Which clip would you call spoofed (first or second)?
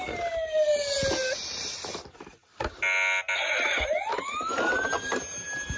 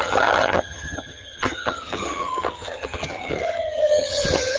second